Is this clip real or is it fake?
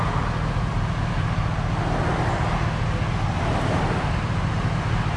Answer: real